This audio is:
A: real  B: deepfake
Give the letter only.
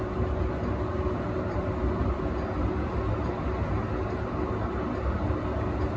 A